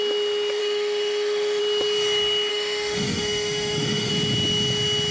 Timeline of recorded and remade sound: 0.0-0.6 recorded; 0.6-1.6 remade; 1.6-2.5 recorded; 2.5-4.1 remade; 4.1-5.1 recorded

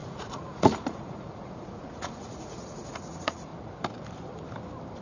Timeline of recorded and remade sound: 0.0-3.5 remade; 3.5-5.0 recorded

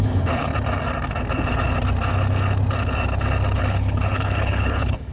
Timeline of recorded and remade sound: 0.0-0.5 remade; 0.5-3.6 recorded; 3.6-5.1 remade

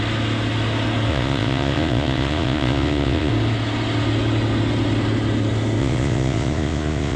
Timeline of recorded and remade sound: 0.0-1.1 recorded; 1.1-3.3 remade; 3.3-5.8 recorded; 5.8-7.2 remade